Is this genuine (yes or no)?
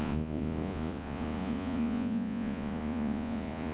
no